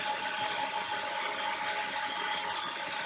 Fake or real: real